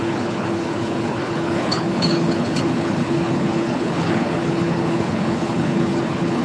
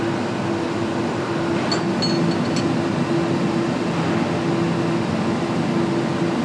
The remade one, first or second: first